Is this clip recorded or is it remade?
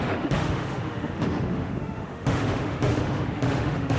remade